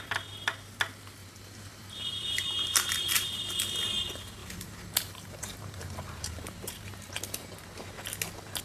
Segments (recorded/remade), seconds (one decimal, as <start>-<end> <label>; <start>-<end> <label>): 0.0-1.2 recorded; 1.2-3.6 remade; 3.6-4.4 recorded; 4.4-7.2 remade; 7.2-8.6 recorded